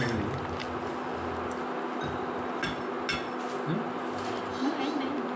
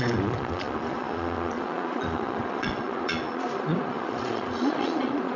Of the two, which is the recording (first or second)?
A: first